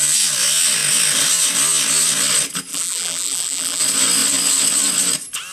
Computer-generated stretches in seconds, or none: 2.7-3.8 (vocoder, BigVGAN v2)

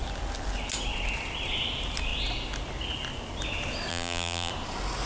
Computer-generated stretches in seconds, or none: 3.9-4.5 (vocoder, BigVGAN v2)